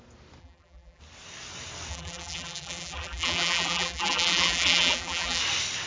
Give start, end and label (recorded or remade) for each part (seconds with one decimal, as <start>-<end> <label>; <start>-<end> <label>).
0.0-0.4 recorded; 0.4-1.0 remade; 1.0-1.9 recorded; 1.9-5.4 remade; 5.4-5.9 recorded